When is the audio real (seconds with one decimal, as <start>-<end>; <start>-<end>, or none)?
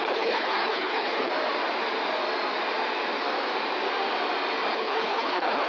1.3-4.7